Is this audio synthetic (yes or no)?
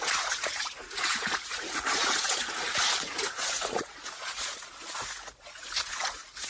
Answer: yes